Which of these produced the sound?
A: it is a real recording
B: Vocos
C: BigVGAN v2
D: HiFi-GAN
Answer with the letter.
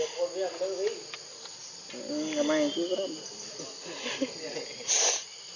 A